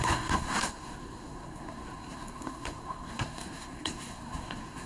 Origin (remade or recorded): remade